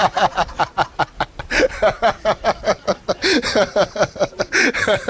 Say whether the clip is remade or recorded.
remade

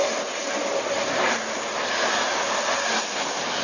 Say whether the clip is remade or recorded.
recorded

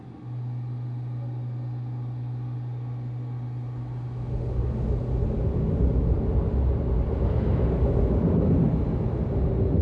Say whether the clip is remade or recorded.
recorded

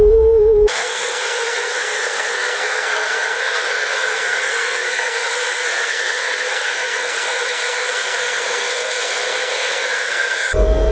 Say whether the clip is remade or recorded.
remade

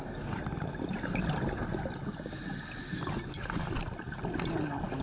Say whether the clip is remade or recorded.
recorded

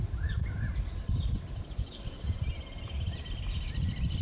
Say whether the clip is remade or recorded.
remade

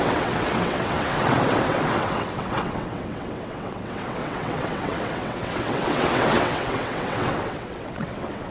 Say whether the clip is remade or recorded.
remade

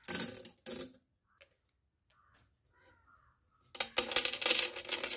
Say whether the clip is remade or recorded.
recorded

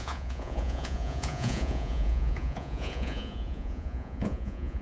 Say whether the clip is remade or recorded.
remade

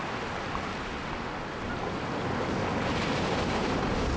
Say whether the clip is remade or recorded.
recorded